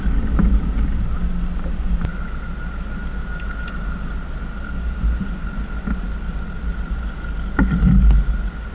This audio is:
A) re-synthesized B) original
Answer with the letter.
B